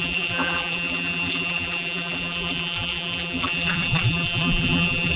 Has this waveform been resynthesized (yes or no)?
yes